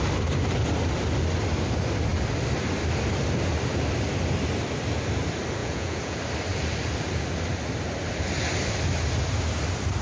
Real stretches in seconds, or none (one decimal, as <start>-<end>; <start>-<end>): 0.0-5.6; 6.2-10.0